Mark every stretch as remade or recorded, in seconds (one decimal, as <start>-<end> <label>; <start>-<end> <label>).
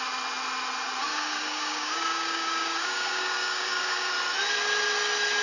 0.0-1.1 recorded; 1.1-4.1 remade; 4.1-5.4 recorded